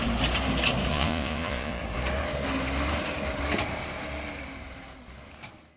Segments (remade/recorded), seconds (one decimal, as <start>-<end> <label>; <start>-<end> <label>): 0.0-0.9 recorded; 0.9-1.8 remade; 1.8-5.8 recorded